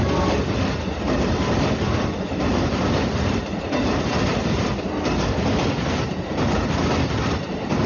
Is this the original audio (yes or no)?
yes